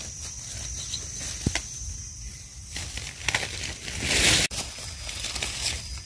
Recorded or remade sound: recorded